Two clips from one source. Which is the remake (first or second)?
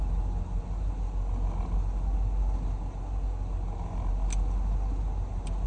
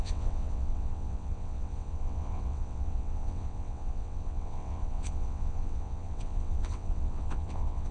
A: second